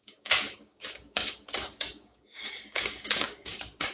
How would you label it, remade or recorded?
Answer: remade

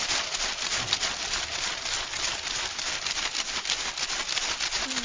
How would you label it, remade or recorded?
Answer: recorded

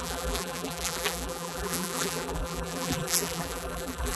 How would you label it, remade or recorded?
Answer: remade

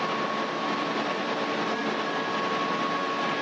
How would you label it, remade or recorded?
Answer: recorded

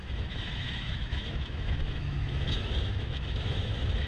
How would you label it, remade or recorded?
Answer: remade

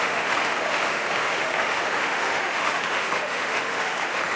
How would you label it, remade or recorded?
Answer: remade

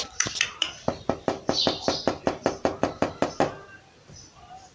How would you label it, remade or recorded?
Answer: remade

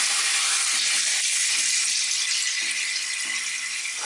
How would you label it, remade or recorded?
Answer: recorded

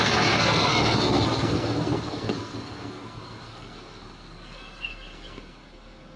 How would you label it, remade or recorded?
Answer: remade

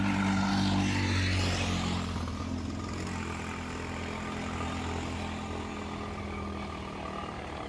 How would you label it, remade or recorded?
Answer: recorded